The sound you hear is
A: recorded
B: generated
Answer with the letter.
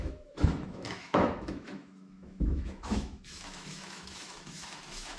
B